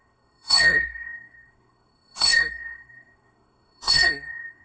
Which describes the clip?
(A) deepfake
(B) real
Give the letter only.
A